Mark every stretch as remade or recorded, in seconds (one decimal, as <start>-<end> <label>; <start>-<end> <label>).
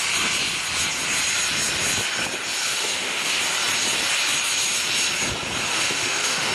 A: 0.0-2.6 recorded; 2.6-3.4 remade; 3.4-5.7 recorded; 5.7-6.5 remade